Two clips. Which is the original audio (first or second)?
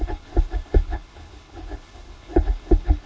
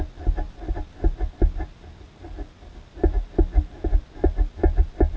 second